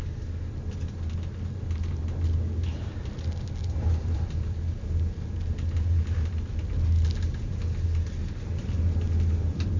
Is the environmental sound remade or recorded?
recorded